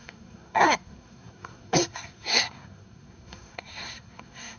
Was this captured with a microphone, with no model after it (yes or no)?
no